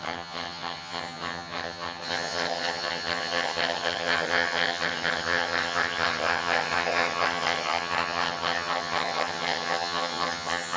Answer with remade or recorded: remade